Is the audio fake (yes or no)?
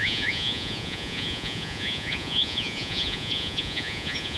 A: yes